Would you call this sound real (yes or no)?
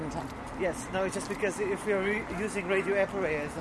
yes